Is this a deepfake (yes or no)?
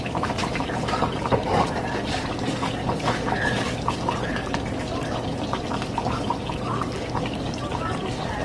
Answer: yes